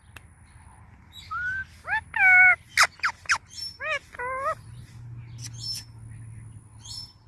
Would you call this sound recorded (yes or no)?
yes